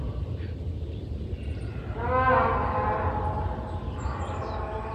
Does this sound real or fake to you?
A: real